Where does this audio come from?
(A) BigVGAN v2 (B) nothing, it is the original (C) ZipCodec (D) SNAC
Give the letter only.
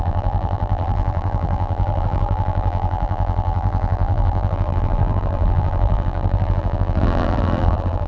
A